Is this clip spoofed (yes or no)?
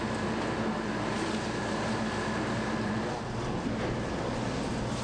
no